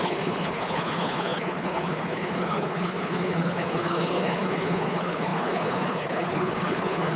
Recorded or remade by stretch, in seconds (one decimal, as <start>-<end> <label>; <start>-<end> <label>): 0.0-7.2 remade